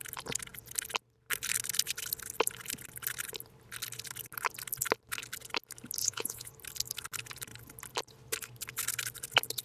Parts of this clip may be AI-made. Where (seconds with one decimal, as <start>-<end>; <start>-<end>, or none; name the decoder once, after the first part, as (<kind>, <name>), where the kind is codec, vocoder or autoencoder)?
6.0-6.5 (vocoder, Vocos)

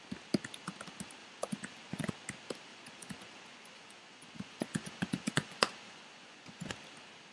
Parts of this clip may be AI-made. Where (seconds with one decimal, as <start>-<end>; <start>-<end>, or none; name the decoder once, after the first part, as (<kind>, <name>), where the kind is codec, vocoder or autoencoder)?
1.2-2.1 (vocoder, Vocos); 2.7-6.7

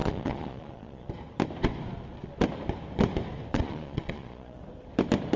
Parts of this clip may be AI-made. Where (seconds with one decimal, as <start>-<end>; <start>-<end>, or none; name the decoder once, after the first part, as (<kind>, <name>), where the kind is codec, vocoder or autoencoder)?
0.0-1.1 (vocoder, Vocos); 3.5-4.6